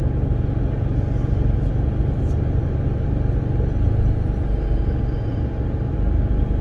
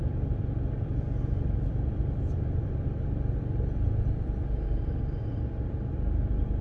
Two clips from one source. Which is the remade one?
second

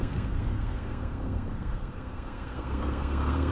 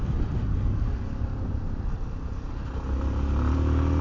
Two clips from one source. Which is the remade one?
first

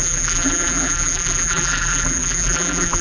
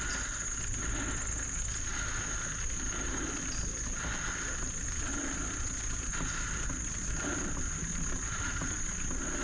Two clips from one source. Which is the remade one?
first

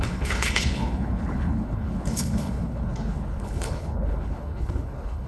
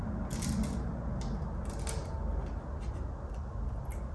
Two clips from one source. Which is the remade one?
first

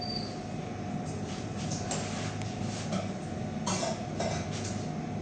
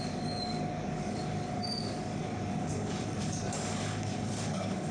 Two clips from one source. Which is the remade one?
second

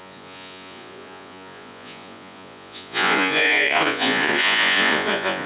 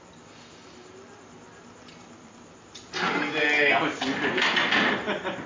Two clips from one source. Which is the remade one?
first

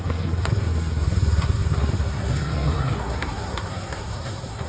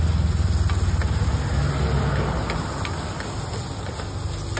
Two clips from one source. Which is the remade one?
first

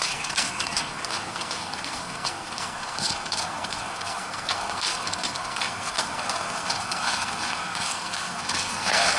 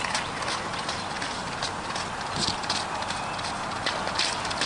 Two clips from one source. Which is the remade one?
first